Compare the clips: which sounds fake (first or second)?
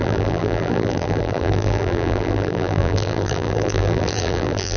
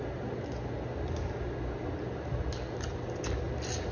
first